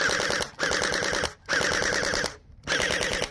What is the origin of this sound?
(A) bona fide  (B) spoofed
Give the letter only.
A